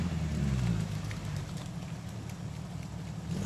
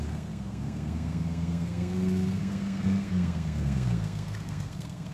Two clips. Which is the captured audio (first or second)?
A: first